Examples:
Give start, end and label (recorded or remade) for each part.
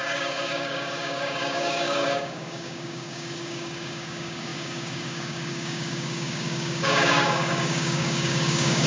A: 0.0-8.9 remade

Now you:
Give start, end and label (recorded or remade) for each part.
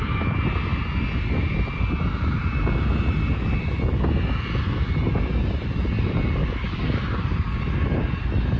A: 0.0-6.4 recorded; 6.4-7.6 remade; 7.6-8.6 recorded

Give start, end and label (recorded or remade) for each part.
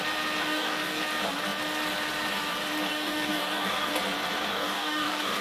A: 0.0-0.4 recorded; 0.4-1.0 remade; 1.0-2.9 recorded; 2.9-3.9 remade; 3.9-4.5 recorded; 4.5-5.4 remade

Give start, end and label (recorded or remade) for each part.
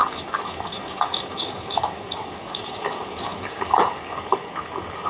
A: 0.0-5.1 remade